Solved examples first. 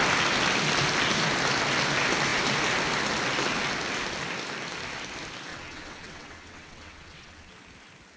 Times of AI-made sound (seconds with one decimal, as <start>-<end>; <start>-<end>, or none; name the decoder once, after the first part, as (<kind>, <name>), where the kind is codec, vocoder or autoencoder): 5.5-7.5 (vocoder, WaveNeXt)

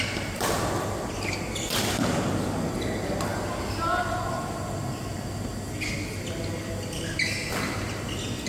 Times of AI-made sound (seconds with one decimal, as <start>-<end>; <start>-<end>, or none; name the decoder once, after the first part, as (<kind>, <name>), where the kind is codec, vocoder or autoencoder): none

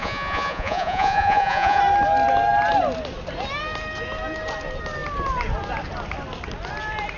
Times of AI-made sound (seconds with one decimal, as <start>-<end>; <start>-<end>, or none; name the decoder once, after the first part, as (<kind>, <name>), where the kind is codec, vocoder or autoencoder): 0.0-1.8 (vocoder, Vocos)

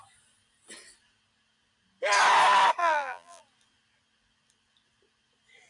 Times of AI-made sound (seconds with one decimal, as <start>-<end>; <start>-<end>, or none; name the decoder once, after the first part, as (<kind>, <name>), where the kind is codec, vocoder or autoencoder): 2.8-3.4 (vocoder, BigVGAN v2)

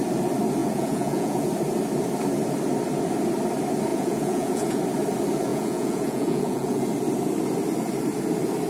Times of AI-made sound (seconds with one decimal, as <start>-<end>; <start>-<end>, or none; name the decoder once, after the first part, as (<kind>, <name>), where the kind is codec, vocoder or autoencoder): 0.6-1.5 (vocoder, Vocos); 3.9-4.8; 5.5-6.8